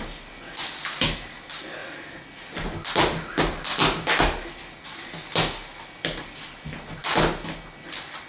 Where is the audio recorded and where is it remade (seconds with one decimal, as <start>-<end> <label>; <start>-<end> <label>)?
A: 0.0-8.3 recorded